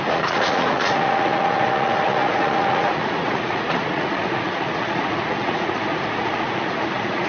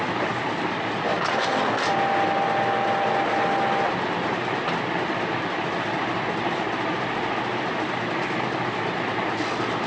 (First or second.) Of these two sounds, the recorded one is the second